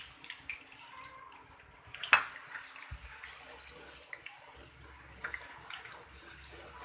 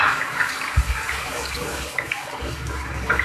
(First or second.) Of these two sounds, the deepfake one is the second